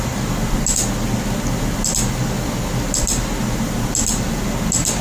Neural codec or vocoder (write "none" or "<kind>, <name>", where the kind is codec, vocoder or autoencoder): none